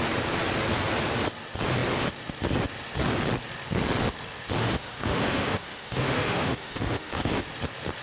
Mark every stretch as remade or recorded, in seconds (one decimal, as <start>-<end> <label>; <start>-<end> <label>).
0.0-4.6 recorded; 4.6-7.3 remade; 7.3-8.0 recorded